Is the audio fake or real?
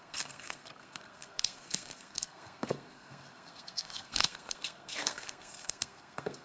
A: fake